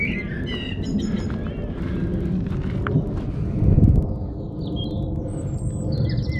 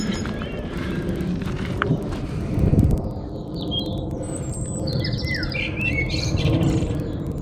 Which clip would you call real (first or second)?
first